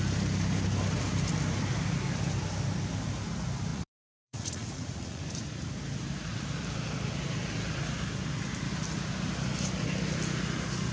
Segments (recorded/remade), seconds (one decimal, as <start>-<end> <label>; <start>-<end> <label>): 0.0-3.7 recorded; 3.7-5.2 remade; 5.2-10.9 recorded